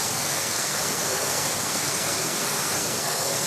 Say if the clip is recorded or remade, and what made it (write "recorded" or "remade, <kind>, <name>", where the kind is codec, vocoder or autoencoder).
remade, codec, SNAC